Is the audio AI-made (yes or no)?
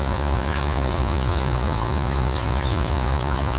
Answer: yes